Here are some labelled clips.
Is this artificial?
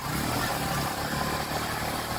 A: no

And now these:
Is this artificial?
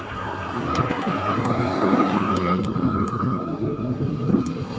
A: yes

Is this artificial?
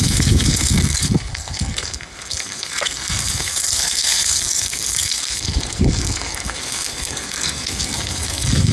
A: yes